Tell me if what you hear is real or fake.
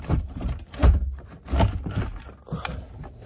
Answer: real